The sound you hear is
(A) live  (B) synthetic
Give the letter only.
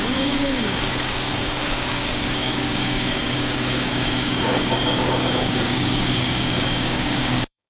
B